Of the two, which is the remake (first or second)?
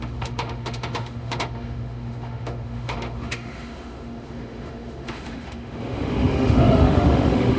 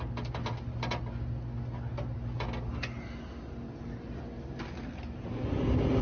first